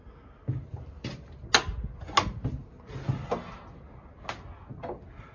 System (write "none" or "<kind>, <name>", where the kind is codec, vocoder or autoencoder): none